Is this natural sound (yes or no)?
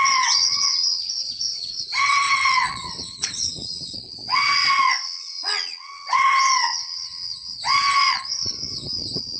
no